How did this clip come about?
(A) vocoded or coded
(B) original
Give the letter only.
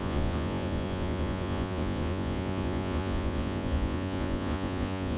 A